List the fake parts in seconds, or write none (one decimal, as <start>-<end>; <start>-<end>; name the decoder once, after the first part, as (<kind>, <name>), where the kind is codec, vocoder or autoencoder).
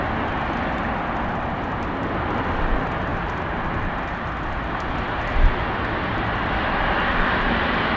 none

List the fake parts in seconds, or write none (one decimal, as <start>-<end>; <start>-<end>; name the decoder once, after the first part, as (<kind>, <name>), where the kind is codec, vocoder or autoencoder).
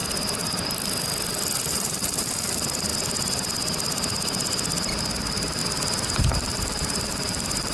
1.7-2.9 (vocoder, BigVGAN v2); 5.0-5.6; 6.2-7.7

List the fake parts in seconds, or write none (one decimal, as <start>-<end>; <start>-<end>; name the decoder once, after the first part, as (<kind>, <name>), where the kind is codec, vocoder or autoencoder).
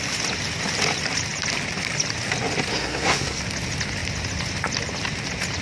2.7-3.4 (codec, SNAC)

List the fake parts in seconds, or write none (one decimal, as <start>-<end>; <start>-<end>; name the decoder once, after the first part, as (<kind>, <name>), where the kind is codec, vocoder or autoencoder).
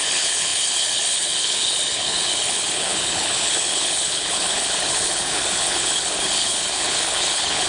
0.0-7.7 (codec, HILCodec)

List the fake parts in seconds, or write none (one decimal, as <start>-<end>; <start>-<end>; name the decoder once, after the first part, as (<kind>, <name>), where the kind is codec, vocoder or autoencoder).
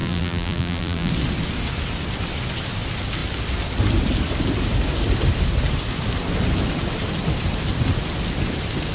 0.0-1.1 (vocoder, BigVGAN v2)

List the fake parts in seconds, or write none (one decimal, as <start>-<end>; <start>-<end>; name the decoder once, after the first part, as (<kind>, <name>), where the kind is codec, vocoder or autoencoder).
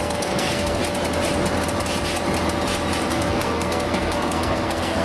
0.0-0.8 (codec, SNAC); 3.1-5.0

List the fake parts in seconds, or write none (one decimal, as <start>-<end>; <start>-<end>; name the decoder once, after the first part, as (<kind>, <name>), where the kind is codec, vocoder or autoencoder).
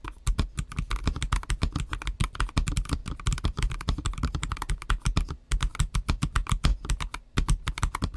3.0-4.7 (vocoder, BigVGAN v2)